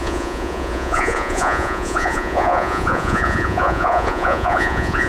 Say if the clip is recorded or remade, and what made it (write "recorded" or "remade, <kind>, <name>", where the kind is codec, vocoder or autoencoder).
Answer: remade, vocoder, Vocos